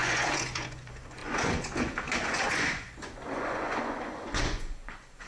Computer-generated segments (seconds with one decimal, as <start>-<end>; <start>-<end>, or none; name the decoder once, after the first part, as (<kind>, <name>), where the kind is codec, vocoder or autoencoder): 0.0-5.3 (vocoder, Vocos)